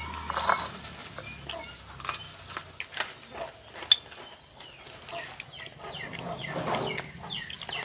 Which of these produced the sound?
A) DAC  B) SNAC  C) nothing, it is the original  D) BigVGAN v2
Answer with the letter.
C